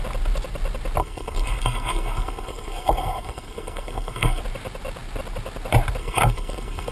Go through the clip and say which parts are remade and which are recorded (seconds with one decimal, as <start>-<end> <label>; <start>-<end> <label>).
0.0-1.0 recorded; 1.0-4.4 remade; 4.4-6.0 recorded; 6.0-6.9 remade